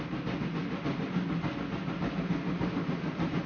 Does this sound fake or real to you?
real